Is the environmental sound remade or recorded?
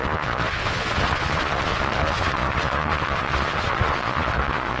remade